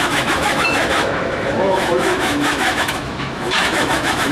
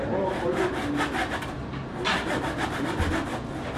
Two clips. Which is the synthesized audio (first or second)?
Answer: first